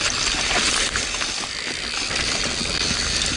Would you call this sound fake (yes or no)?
no